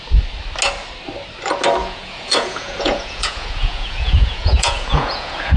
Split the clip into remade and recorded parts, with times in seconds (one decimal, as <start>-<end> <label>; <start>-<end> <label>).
0.0-1.8 recorded; 1.8-5.6 remade